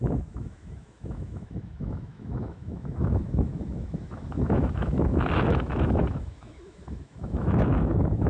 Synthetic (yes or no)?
yes